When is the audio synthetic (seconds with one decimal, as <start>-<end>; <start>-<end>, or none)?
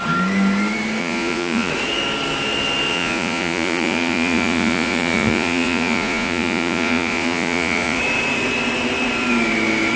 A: 1.0-1.7; 2.9-8.0